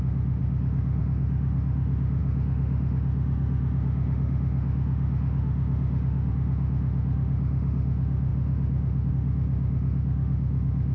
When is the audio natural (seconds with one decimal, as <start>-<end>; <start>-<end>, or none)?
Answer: none